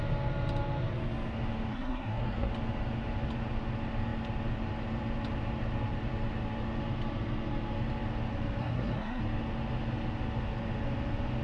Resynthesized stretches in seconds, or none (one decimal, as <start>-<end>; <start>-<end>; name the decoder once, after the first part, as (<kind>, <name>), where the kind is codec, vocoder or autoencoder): 1.7-2.5 (codec, SNAC); 8.6-9.2